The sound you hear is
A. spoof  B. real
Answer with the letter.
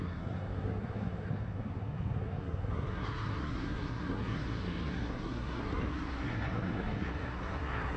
A